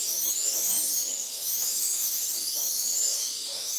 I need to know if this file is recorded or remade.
remade